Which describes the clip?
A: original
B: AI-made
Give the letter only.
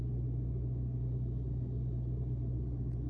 A